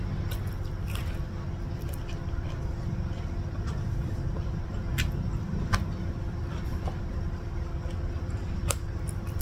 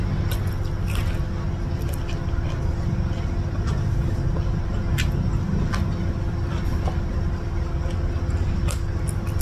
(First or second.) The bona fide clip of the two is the second